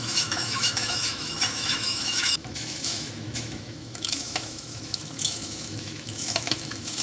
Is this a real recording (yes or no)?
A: no